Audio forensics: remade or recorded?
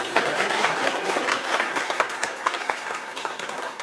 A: remade